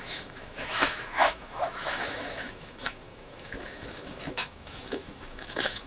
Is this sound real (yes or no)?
no